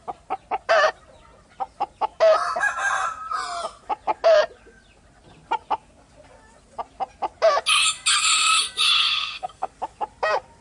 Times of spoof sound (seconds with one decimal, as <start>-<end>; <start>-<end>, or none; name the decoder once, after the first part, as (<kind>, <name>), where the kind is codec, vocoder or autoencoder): 9.0-9.7 (codec, SNAC)